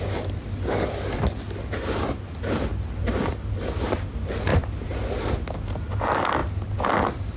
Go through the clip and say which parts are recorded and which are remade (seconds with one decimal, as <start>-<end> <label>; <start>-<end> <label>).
0.0-2.7 recorded; 2.7-3.5 remade; 3.5-4.5 recorded; 4.5-5.2 remade; 5.2-7.4 recorded